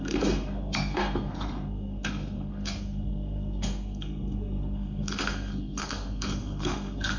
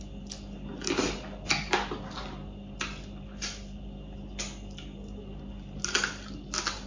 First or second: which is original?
second